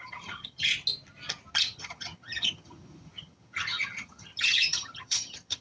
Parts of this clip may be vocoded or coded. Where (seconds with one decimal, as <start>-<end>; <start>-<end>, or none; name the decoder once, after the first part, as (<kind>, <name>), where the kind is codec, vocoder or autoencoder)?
0.0-0.7 (vocoder, HiFi-GAN); 1.6-5.6